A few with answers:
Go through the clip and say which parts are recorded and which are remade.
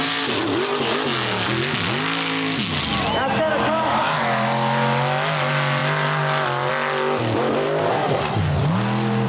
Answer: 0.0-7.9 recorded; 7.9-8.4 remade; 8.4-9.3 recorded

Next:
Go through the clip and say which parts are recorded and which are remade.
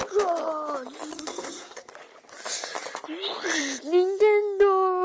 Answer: 0.0-1.1 recorded; 1.1-1.9 remade; 1.9-5.0 recorded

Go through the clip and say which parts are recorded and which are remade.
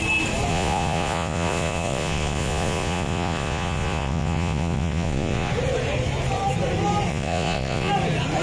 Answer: 0.0-0.5 recorded; 0.5-5.5 remade; 5.5-7.1 recorded; 7.1-7.9 remade; 7.9-8.4 recorded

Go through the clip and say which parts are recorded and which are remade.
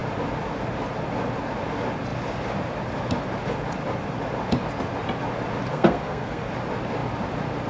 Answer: 0.0-5.7 recorded; 5.7-6.4 remade; 6.4-7.7 recorded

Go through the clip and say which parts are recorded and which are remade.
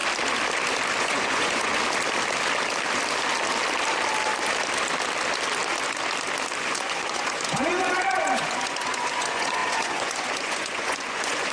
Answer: 0.0-1.0 recorded; 1.0-1.7 remade; 1.7-6.6 recorded; 6.6-11.5 remade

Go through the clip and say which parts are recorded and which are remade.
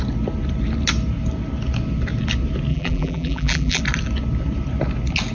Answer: 0.0-2.7 recorded; 2.7-3.8 remade; 3.8-5.3 recorded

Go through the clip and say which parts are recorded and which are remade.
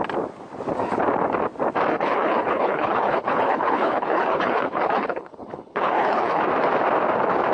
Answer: 0.0-1.9 recorded; 1.9-6.4 remade; 6.4-7.5 recorded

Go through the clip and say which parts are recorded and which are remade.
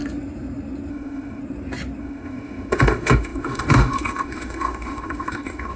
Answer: 0.0-0.9 recorded; 0.9-1.4 remade; 1.4-2.0 recorded; 2.0-5.8 remade